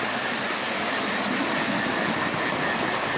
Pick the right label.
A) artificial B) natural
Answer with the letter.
B